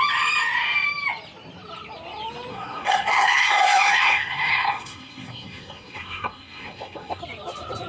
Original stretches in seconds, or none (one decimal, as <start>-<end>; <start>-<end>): 0.0-2.5; 7.2-7.9